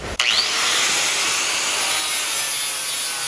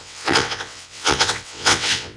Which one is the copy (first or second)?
second